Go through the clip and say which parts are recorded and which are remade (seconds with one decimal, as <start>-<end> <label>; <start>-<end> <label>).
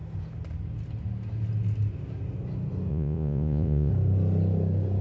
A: 0.0-2.9 recorded; 2.9-3.9 remade; 3.9-5.0 recorded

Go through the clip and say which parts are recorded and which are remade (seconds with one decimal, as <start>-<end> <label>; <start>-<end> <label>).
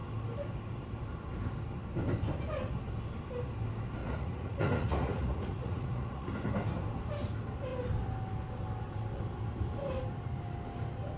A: 0.0-4.0 recorded; 4.0-6.3 remade; 6.3-11.2 recorded